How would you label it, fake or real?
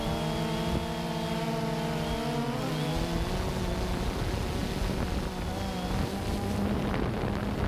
real